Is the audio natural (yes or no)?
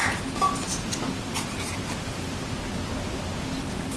yes